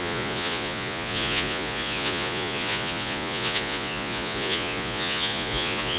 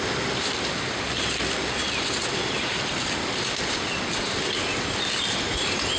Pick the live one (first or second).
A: second